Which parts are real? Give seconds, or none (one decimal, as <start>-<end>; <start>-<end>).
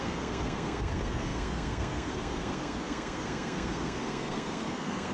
none